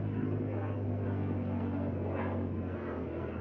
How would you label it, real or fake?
fake